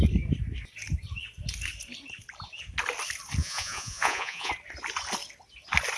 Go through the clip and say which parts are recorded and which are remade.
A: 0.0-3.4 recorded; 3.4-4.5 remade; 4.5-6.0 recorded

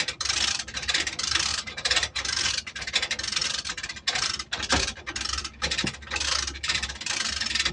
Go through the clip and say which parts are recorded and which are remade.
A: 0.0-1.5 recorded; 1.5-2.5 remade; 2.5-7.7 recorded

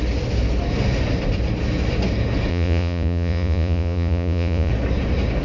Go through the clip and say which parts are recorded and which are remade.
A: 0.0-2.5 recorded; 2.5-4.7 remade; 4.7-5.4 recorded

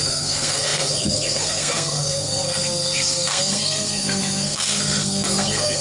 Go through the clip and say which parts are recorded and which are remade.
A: 0.0-5.8 remade

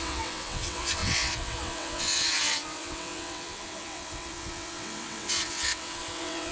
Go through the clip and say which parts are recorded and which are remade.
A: 0.0-6.5 remade

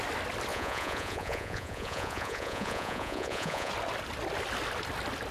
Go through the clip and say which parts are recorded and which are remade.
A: 0.0-0.5 recorded; 0.5-3.7 remade; 3.7-5.3 recorded

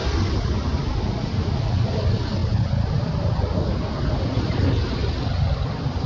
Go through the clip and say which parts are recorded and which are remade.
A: 0.0-6.1 recorded

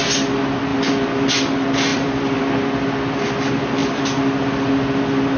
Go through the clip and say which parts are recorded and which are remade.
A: 0.0-1.9 recorded; 1.9-2.4 remade; 2.4-5.4 recorded